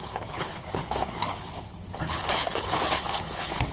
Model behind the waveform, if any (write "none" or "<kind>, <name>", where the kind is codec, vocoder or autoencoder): codec, HILCodec